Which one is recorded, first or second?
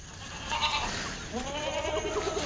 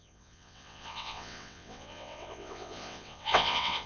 first